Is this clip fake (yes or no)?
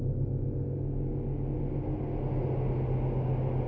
no